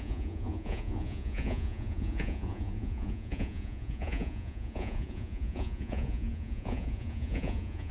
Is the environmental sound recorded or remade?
remade